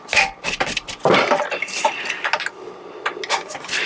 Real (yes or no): yes